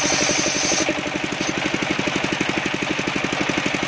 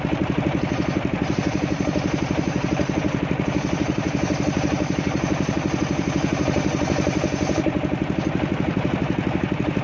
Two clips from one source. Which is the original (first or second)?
first